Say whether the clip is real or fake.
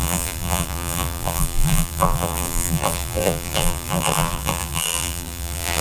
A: fake